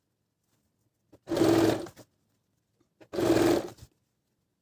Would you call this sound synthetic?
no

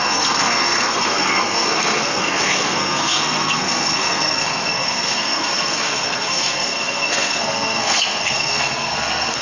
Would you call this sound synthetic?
yes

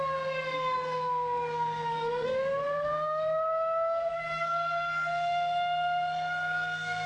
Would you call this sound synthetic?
yes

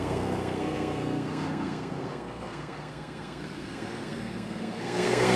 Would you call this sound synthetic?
yes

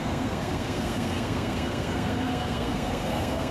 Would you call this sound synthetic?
yes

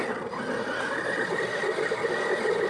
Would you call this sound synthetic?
no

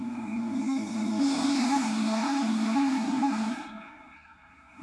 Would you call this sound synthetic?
yes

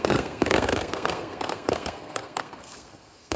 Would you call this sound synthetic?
yes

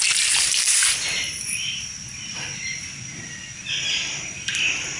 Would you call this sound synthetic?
no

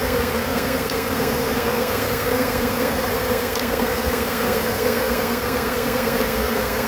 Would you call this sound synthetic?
yes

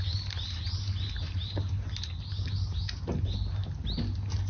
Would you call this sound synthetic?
no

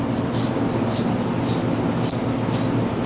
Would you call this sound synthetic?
no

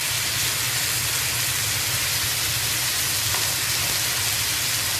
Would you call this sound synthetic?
no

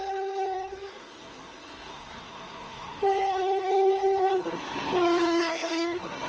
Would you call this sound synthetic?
yes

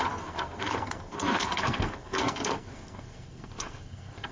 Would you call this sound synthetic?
yes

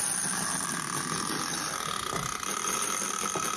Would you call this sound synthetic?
no